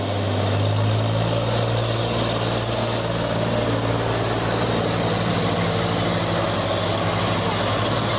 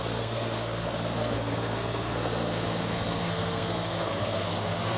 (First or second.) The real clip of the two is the first